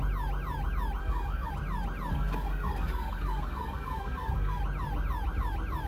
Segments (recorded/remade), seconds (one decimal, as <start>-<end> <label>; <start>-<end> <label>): 0.0-1.0 recorded; 1.0-1.5 remade; 1.5-2.1 recorded; 2.1-4.6 remade; 4.6-5.9 recorded